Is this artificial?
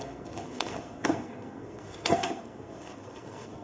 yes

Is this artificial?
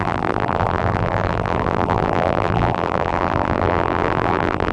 yes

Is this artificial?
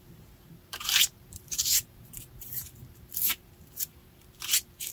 yes